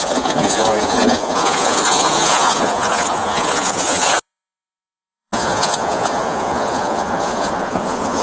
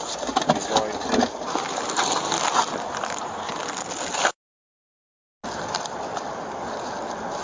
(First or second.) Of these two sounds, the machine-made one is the first